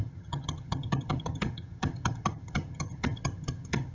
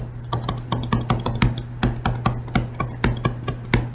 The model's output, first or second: first